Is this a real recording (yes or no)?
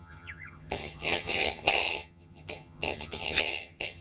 no